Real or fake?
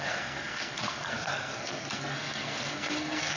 fake